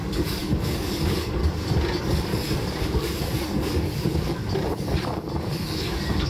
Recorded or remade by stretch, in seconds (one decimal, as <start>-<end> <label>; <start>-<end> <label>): 0.0-1.4 remade; 1.4-2.0 recorded; 2.0-4.4 remade; 4.4-5.5 recorded; 5.5-6.3 remade